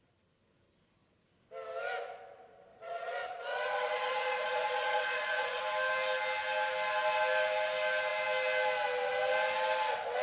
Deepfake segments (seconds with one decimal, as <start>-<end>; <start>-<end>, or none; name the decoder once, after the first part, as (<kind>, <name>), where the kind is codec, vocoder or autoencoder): 2.7-5.6 (vocoder, Vocos)